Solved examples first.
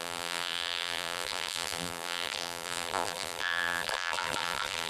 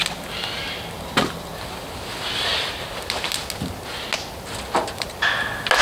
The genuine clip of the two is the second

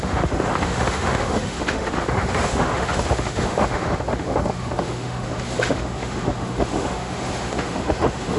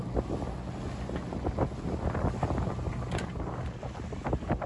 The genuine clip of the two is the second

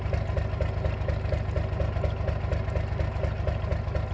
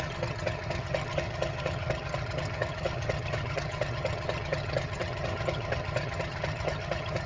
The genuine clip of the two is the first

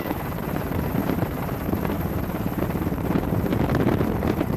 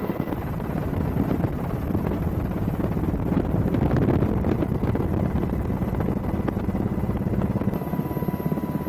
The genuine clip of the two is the second